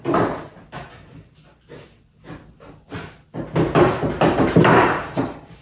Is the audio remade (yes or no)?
no